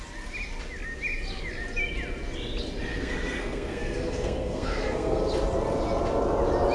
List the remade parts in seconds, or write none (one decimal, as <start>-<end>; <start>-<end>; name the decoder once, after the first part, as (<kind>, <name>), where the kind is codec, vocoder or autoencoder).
2.9-5.2 (codec, SNAC)